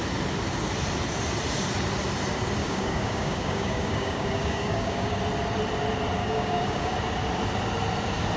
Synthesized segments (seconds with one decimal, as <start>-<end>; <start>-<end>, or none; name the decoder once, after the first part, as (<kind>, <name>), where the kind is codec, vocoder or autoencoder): 2.6-5.2 (codec, DAC); 6.2-6.9

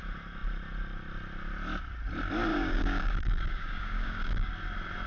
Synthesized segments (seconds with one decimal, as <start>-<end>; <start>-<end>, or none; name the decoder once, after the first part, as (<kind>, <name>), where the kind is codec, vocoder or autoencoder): 2.5-4.5 (codec, DAC)

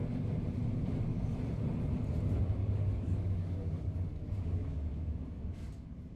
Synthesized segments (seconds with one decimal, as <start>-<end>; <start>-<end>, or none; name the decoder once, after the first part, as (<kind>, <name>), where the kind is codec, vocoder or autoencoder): 2.6-6.2 (codec, DAC)

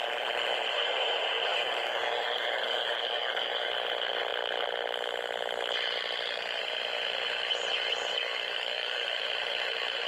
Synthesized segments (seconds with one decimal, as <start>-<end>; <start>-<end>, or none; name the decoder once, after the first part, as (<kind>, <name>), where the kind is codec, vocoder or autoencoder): 1.5-3.7 (codec, DAC); 8.1-9.2

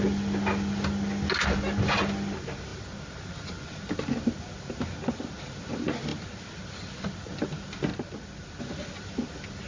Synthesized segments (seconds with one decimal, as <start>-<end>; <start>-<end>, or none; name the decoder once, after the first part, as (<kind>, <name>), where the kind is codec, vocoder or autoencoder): none

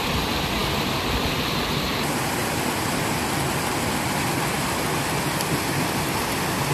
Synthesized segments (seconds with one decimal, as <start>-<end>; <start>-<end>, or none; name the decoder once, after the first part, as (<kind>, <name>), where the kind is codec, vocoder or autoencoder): none